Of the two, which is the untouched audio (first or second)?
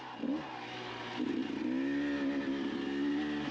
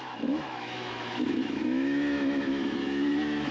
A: first